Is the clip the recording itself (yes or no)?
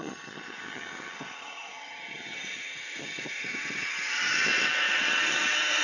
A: no